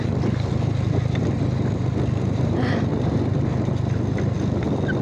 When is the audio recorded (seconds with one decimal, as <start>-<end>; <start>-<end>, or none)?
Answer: 2.9-4.6